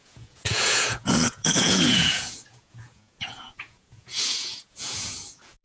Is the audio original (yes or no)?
no